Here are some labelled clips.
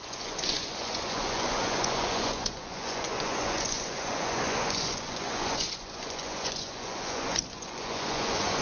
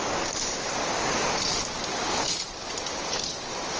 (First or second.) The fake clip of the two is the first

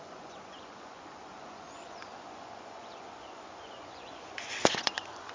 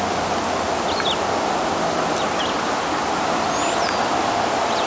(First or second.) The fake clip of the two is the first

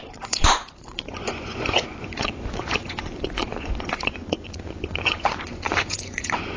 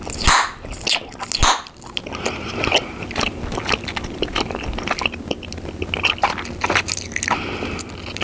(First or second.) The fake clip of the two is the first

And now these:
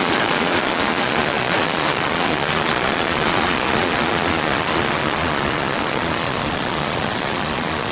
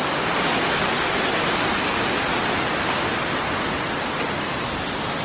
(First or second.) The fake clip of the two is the first